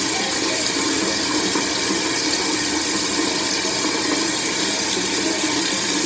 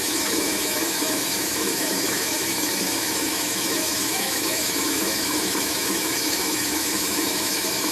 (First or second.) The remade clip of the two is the second